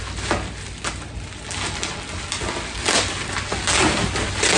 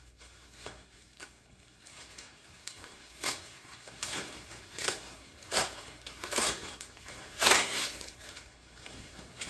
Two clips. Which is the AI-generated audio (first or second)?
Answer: second